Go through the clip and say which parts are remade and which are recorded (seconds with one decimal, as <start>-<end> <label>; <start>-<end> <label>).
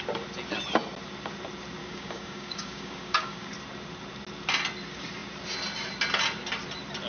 0.0-1.8 recorded; 1.8-3.5 remade; 3.5-7.1 recorded